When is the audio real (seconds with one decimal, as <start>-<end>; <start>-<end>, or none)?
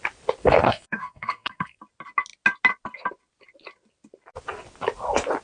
0.0-0.4; 1.8-5.4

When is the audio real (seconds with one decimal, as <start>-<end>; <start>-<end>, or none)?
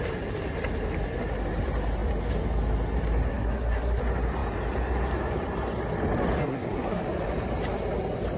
0.0-3.3; 4.0-6.4; 7.0-8.4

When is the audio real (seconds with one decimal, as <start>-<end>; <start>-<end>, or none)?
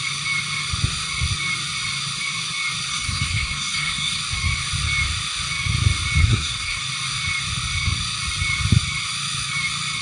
0.0-2.9; 4.2-6.2; 6.8-10.0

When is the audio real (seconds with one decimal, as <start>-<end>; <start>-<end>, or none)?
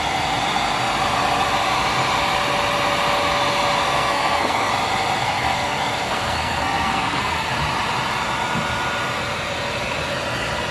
0.0-3.8; 4.7-5.2; 7.5-10.7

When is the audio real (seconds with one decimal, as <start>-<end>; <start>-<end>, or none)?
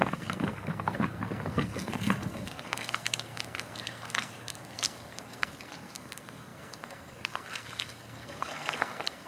none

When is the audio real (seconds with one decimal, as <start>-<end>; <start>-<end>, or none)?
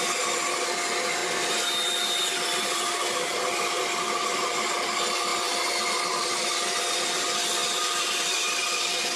0.0-9.2